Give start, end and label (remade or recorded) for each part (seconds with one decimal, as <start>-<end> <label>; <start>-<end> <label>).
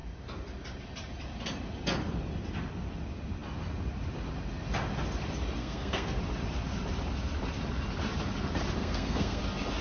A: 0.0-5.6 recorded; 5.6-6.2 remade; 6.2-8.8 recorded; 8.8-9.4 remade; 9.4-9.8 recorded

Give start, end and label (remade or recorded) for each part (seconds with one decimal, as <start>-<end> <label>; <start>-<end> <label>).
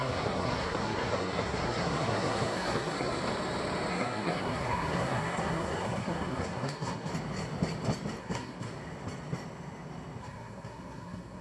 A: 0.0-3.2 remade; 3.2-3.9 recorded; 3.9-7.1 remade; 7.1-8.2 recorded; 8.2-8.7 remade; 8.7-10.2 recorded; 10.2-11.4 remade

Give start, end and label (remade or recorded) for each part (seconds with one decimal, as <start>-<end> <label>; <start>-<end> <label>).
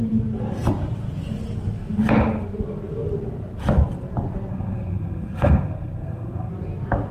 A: 0.0-4.5 recorded; 4.5-6.5 remade; 6.5-7.1 recorded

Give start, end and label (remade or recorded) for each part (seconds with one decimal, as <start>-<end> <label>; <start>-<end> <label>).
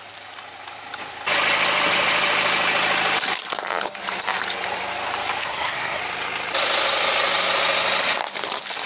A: 0.0-5.4 recorded; 5.4-6.0 remade; 6.0-8.9 recorded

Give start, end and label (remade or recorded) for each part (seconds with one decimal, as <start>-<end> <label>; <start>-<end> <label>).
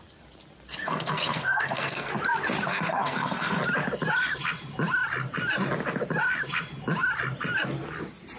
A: 0.0-0.8 recorded; 0.8-2.1 remade; 2.1-2.7 recorded; 2.7-3.6 remade; 3.6-8.4 recorded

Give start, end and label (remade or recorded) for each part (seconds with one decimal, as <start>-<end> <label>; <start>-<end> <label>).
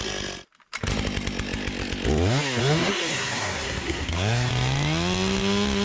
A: 0.0-2.6 recorded; 2.6-4.5 remade; 4.5-5.8 recorded